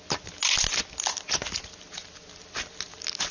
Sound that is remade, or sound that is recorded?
recorded